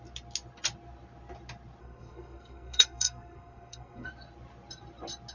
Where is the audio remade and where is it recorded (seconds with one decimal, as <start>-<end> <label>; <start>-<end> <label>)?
0.0-1.8 recorded; 1.8-4.1 remade; 4.1-5.3 recorded